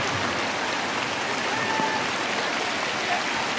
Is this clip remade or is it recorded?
recorded